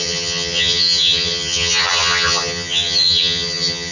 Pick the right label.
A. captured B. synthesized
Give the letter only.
B